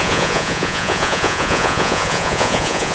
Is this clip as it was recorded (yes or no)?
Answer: no